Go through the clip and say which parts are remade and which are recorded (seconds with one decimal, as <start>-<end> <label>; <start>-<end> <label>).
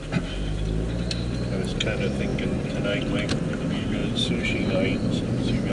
0.0-5.7 recorded